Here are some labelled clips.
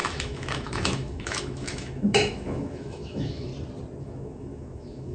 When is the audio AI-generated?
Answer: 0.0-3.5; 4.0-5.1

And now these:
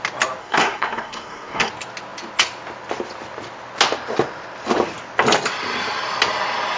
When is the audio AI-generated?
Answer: 0.4-1.7

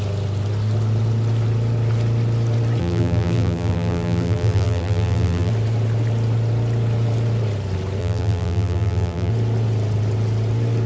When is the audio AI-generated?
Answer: 2.8-5.5; 8.0-9.3

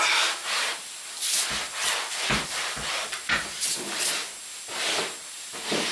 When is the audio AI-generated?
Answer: 0.4-1.3; 1.8-4.4; 5.2-5.9